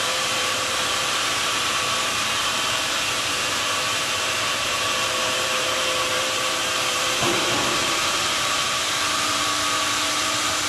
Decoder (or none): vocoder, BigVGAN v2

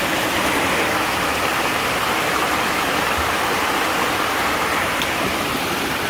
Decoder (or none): vocoder, BigVGAN v2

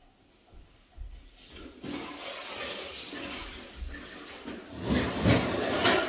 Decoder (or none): none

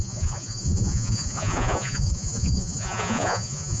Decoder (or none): vocoder, Vocos